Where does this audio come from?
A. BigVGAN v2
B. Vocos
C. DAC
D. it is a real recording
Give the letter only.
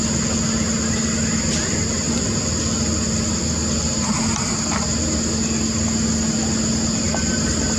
D